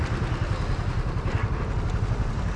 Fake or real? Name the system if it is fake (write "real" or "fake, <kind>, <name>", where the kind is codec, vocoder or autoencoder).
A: real